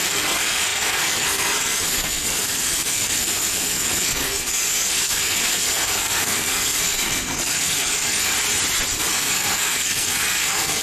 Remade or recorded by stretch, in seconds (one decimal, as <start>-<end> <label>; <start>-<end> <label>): 0.0-8.3 remade; 8.3-9.0 recorded; 9.0-10.8 remade